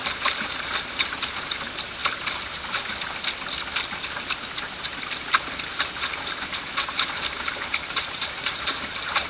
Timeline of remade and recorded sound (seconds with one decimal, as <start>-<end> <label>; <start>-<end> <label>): 0.0-2.0 remade; 2.0-5.7 recorded; 5.7-9.3 remade